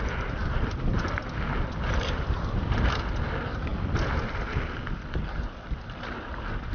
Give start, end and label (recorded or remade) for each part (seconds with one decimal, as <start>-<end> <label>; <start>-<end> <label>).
0.0-0.4 recorded; 0.4-1.9 remade; 1.9-6.7 recorded